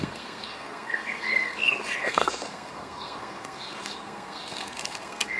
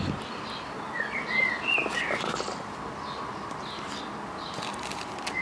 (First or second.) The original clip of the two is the second